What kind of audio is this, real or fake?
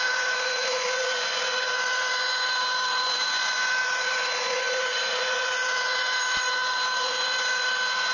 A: fake